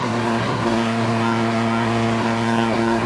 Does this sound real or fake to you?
fake